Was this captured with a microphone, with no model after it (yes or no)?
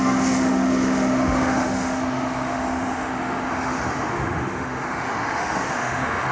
no